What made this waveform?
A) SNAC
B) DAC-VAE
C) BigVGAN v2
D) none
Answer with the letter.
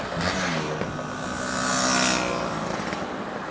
D